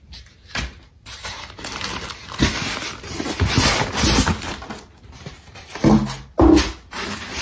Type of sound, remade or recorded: recorded